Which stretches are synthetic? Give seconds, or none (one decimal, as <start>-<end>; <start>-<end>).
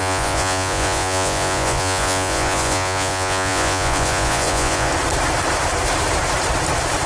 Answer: 0.0-4.9